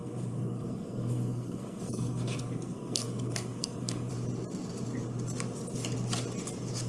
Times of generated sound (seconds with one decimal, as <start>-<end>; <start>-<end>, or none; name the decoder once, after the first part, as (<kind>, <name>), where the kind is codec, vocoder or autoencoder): 0.0-4.1 (codec, SNAC)